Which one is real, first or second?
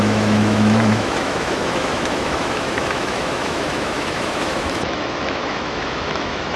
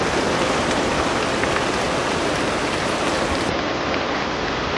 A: second